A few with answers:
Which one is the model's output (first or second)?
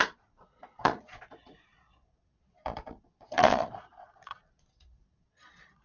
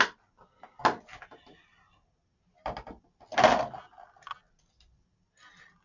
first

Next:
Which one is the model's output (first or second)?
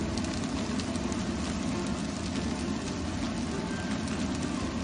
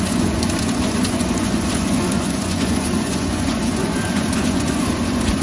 second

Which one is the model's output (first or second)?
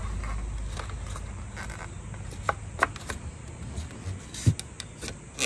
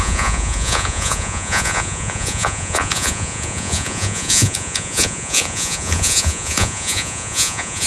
second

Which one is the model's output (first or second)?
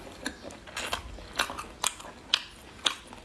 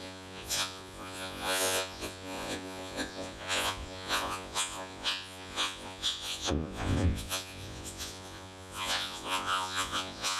second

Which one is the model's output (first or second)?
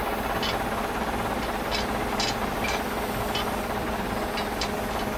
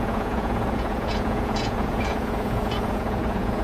second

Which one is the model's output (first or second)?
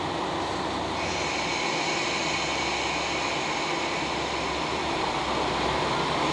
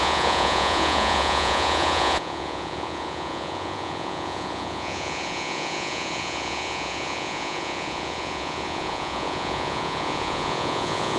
second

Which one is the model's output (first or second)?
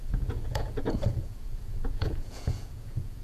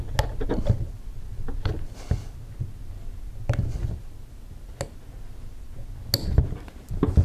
first